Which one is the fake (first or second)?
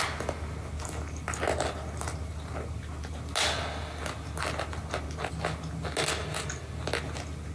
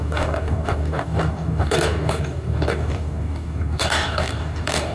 second